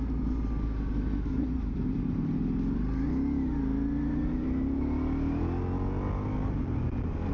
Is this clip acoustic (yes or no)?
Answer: yes